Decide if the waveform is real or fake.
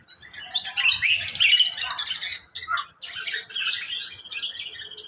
real